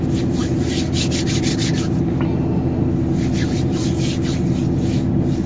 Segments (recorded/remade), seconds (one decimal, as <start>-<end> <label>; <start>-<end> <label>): 0.0-5.5 recorded